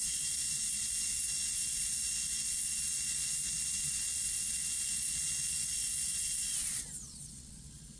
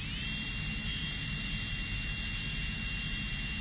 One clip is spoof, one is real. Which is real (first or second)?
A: second